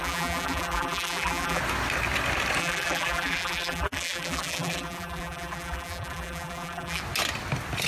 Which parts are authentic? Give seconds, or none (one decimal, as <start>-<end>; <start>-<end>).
1.6-2.6; 7.0-7.9

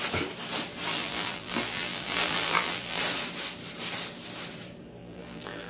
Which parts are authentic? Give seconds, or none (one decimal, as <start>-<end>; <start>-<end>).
0.0-0.9; 3.0-5.0

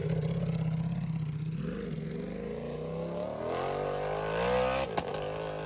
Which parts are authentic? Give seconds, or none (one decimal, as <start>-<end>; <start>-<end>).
0.0-5.7

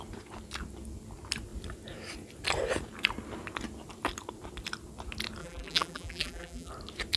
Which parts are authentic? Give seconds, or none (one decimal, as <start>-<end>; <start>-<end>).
0.0-5.4; 6.7-7.2

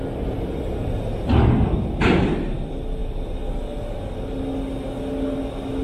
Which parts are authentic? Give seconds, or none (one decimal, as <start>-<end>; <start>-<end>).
0.0-5.8